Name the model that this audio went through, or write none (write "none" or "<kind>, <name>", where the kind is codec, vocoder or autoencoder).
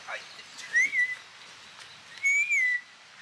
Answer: none